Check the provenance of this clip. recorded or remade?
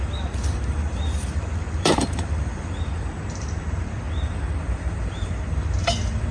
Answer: remade